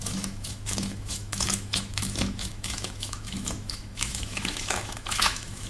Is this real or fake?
fake